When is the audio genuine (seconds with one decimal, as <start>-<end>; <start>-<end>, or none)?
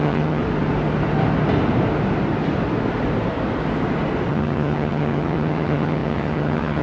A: 0.4-4.3